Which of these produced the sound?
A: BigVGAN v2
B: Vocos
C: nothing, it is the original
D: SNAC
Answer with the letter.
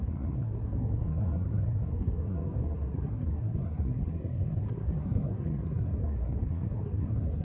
D